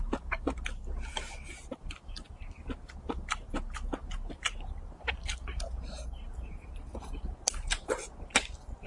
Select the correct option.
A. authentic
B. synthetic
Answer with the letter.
A